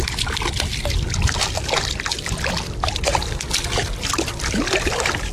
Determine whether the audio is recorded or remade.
recorded